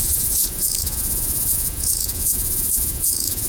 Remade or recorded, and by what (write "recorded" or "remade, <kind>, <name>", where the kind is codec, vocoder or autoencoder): remade, vocoder, Vocos